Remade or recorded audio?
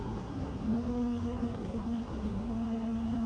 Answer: remade